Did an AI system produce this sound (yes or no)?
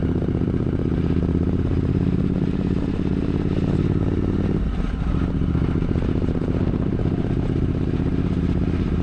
yes